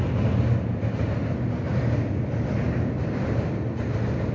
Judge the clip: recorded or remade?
recorded